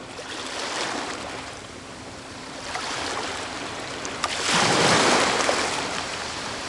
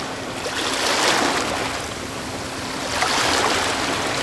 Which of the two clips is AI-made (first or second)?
first